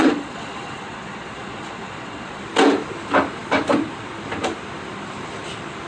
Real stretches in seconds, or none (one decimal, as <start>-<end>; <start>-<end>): 2.4-5.9